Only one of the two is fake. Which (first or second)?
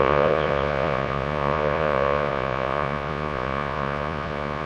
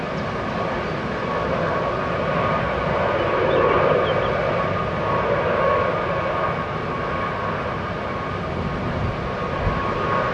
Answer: first